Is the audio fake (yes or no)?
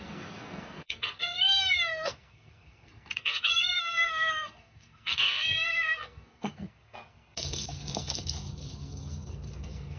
yes